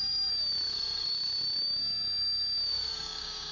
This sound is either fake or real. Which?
fake